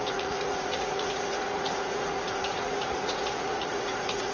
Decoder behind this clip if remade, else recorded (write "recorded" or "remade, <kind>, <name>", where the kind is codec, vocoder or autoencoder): remade, vocoder, Vocos